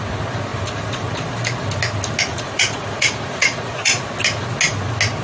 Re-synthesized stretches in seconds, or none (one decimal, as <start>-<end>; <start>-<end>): 2.3-4.0